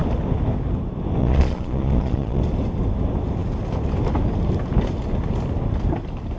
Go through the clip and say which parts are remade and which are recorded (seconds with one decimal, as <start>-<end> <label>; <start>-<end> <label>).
0.0-1.2 recorded; 1.2-2.4 remade; 2.4-6.4 recorded